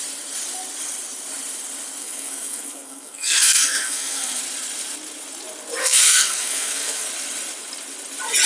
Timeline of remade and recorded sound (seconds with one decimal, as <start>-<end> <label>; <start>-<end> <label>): 0.0-2.0 recorded; 2.0-4.4 remade; 4.4-5.8 recorded; 5.8-7.1 remade; 7.1-8.5 recorded